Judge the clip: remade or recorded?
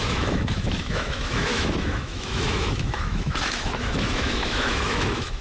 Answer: remade